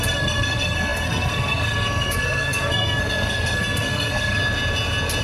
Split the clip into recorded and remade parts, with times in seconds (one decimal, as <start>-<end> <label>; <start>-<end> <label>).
0.0-4.4 remade; 4.4-5.2 recorded